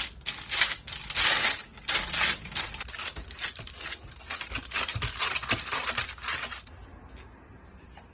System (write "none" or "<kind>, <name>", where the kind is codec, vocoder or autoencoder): none